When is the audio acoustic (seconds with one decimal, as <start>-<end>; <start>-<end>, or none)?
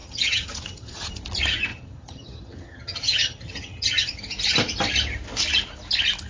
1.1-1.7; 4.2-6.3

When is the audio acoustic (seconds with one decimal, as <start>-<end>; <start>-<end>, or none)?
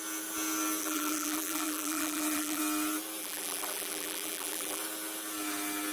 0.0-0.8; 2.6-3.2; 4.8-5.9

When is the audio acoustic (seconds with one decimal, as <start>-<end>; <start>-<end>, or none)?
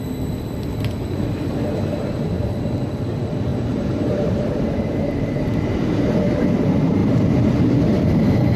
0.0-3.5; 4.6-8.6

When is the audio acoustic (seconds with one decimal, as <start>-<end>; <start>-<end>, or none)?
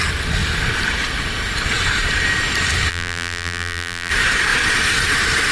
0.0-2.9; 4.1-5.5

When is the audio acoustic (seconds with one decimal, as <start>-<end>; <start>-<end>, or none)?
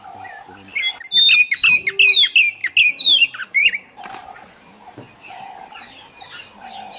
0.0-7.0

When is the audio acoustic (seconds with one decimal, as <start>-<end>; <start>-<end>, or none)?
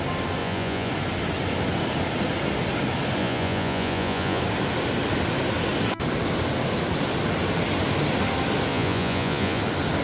0.0-0.4; 0.9-3.2; 4.4-8.7; 9.6-10.0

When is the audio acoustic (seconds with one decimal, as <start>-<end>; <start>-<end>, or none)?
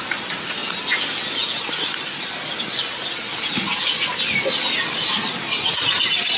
0.0-6.4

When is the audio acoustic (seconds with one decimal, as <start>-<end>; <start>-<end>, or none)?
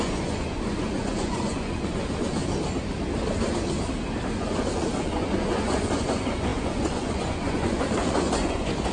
2.4-4.4